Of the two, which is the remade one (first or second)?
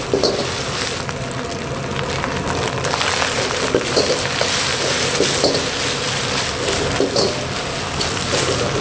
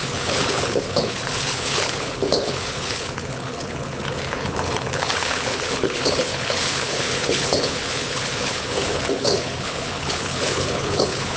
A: second